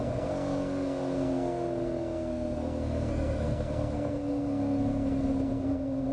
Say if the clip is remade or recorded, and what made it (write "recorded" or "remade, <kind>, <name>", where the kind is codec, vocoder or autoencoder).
remade, codec, SNAC